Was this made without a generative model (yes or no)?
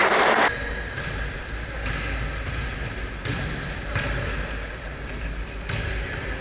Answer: yes